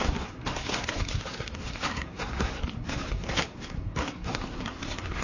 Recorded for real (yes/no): no